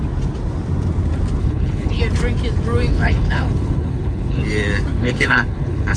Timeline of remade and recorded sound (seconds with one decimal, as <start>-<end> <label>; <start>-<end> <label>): 0.0-1.4 recorded; 1.4-2.0 remade; 2.0-2.9 recorded; 2.9-4.4 remade; 4.4-4.9 recorded; 4.9-6.0 remade